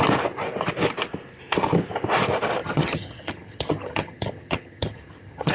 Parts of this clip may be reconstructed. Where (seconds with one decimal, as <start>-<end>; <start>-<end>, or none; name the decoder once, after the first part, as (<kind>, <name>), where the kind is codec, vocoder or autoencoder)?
2.6-5.5 (vocoder, HiFi-GAN)